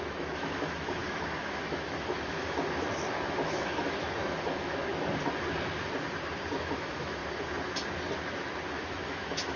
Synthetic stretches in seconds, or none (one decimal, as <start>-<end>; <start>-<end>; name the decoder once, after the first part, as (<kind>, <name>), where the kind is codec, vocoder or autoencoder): 0.0-4.9 (autoencoder, DAC-VAE); 6.6-7.2; 8.7-9.6